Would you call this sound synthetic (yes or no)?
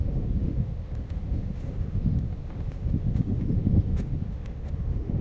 yes